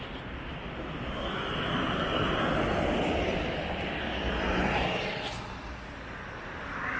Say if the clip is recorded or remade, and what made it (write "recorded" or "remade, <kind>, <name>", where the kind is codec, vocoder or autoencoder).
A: recorded